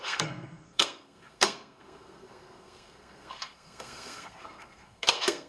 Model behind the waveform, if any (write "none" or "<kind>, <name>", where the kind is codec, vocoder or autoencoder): codec, SNAC